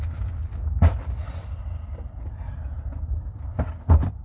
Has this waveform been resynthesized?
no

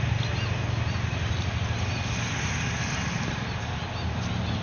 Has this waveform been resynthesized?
no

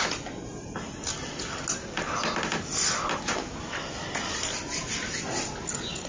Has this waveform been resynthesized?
no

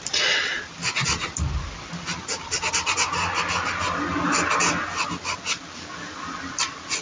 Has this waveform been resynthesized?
no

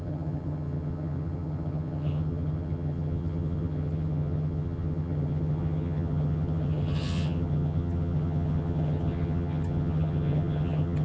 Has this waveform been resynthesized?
yes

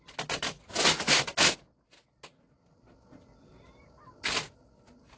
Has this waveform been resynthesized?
no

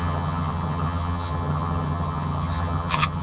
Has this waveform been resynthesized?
yes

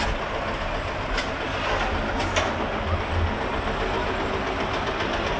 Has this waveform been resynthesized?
no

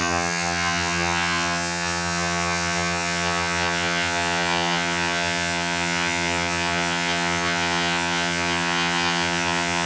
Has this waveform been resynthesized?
yes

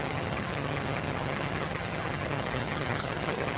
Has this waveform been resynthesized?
yes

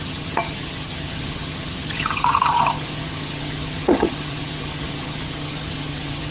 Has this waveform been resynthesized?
yes